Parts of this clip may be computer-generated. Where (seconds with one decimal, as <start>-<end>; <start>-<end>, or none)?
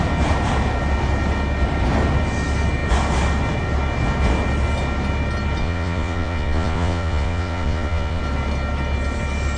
5.6-8.2